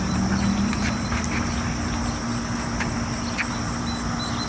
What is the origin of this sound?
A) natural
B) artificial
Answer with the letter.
A